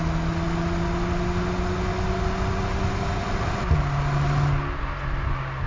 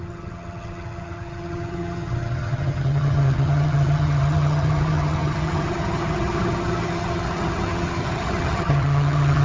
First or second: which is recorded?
first